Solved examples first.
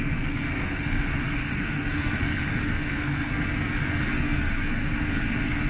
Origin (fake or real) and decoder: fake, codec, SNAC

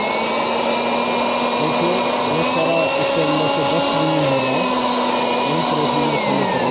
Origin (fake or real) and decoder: real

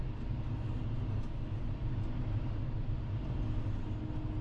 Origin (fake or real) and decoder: real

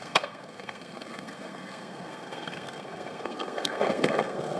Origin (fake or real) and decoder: fake, codec, SNAC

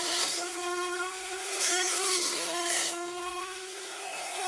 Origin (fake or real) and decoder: fake, codec, SNAC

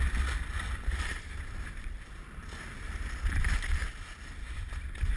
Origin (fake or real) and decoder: real